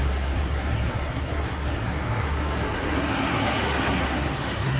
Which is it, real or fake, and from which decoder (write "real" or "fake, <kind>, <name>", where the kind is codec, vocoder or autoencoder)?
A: fake, codec, SNAC